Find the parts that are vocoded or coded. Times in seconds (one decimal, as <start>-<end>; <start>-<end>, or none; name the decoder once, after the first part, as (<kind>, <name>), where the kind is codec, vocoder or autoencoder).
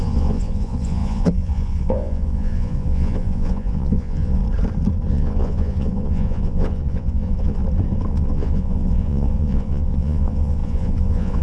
0.0-4.4 (vocoder, Vocos); 5.1-7.6; 8.1-11.4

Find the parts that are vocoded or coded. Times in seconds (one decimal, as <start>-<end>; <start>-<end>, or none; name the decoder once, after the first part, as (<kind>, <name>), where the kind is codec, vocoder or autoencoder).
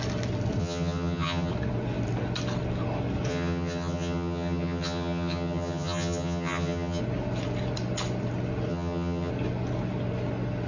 0.6-1.5 (vocoder, HiFi-GAN); 3.3-7.0; 8.7-9.3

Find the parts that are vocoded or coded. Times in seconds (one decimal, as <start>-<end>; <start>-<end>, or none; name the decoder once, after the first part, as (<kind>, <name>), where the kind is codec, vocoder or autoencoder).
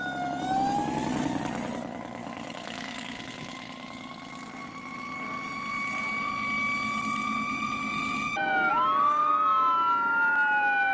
2.2-3.2 (codec, DAC); 8.7-9.3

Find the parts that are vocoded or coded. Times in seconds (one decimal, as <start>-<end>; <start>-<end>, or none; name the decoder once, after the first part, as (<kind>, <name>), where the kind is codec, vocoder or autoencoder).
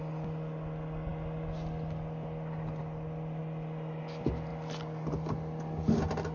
none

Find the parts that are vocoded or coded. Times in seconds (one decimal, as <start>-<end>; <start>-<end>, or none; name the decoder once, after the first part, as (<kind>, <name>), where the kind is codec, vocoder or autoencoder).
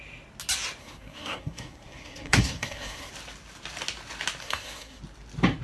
0.8-3.1 (codec, SNAC); 4.4-5.0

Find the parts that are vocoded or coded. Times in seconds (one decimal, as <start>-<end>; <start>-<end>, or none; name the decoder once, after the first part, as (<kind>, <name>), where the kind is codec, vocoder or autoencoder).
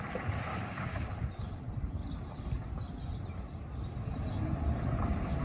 0.5-1.1 (codec, DAC)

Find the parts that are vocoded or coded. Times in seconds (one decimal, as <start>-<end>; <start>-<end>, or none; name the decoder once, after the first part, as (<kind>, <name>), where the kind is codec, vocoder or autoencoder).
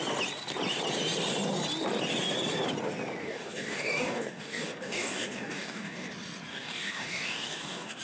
3.2-6.1 (codec, DAC); 6.5-8.0